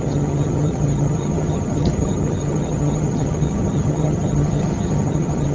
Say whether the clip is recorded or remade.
remade